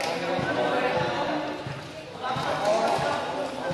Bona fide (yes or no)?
yes